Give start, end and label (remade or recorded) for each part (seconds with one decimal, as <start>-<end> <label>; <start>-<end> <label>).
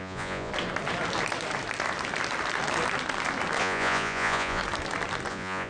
0.0-0.5 remade; 0.5-3.6 recorded; 3.6-4.6 remade; 4.6-5.3 recorded; 5.3-5.7 remade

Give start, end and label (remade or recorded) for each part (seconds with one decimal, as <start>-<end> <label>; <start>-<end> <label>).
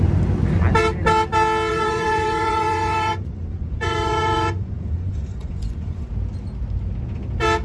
0.0-1.7 recorded; 1.7-6.1 remade; 6.1-7.6 recorded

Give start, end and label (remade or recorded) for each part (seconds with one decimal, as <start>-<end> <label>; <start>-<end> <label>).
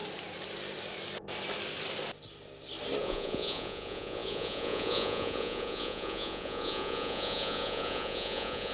0.0-3.0 recorded; 3.0-8.7 remade